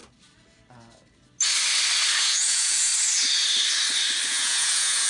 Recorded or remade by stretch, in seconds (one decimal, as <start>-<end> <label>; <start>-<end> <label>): 0.0-2.2 recorded; 2.2-2.9 remade; 2.9-4.3 recorded; 4.3-5.1 remade